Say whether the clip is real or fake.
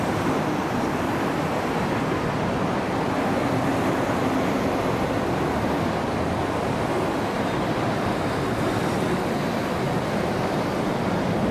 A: fake